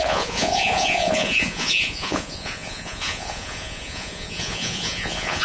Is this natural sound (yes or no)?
no